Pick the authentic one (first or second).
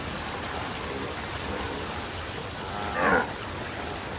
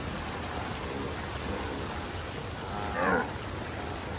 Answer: second